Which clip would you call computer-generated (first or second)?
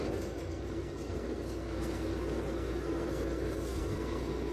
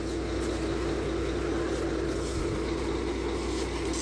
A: first